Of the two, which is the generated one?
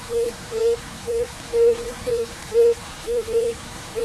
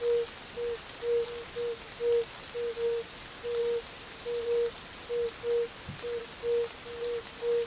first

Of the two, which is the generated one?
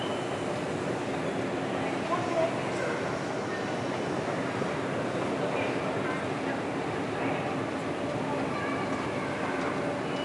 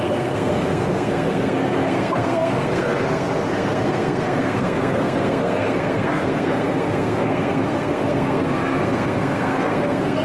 second